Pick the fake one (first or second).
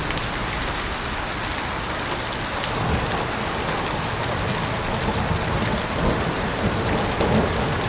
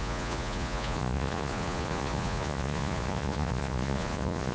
second